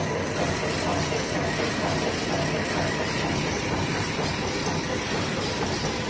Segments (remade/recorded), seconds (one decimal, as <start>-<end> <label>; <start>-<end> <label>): 0.0-0.9 remade; 0.9-2.7 recorded; 2.7-6.1 remade